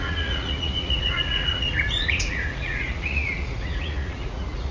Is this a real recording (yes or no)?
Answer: no